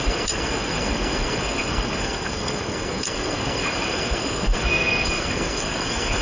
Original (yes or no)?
no